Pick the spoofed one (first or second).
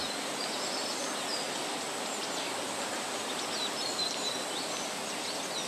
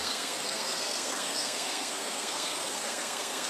second